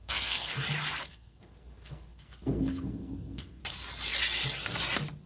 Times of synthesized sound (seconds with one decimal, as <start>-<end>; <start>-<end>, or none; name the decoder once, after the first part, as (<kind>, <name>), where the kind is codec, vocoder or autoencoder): 0.0-0.5 (codec, SNAC); 1.1-3.6